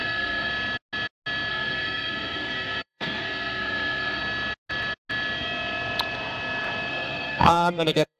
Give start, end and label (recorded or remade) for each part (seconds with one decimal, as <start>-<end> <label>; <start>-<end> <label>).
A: 0.0-0.5 remade; 0.5-1.5 recorded; 1.5-4.2 remade; 4.2-6.9 recorded; 6.9-8.2 remade